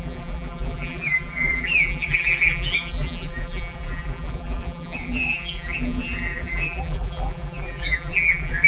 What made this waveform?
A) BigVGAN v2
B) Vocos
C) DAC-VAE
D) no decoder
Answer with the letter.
A